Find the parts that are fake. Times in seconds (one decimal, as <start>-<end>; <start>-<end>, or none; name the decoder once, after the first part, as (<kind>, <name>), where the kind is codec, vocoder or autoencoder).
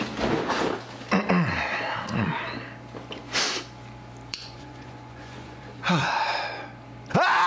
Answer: 4.3-6.1 (vocoder, Vocos)